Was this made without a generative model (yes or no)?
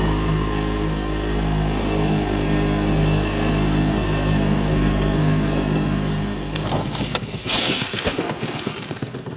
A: no